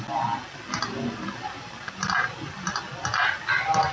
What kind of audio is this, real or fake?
real